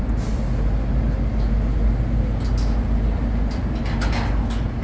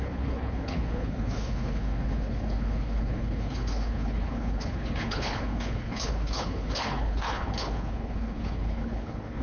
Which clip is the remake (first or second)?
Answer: second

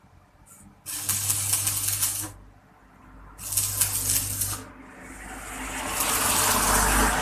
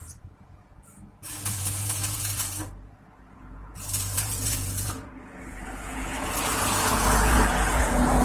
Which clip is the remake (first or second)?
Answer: second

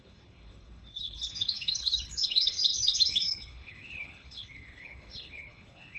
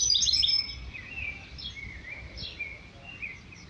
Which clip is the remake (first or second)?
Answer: first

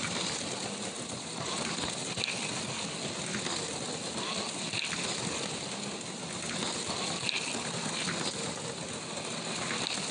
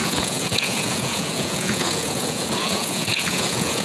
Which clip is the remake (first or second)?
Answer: second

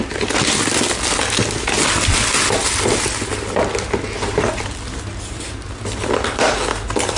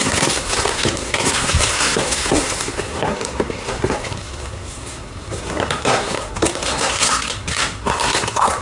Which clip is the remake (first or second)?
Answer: second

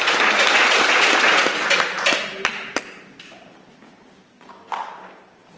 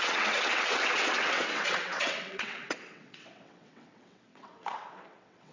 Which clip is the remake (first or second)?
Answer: second